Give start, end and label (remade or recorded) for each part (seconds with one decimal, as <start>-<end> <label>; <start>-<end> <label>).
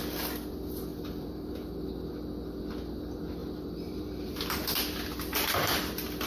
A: 0.0-0.9 recorded; 0.9-2.1 remade; 2.1-3.4 recorded; 3.4-4.8 remade; 4.8-5.3 recorded; 5.3-5.8 remade; 5.8-6.3 recorded